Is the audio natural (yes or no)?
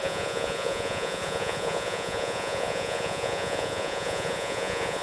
no